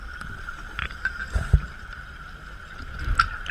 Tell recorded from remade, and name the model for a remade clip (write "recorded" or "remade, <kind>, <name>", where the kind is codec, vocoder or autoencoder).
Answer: remade, vocoder, BigVGAN v2